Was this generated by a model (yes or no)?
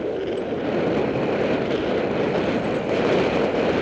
no